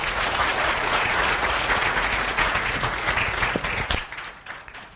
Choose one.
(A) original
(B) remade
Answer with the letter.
B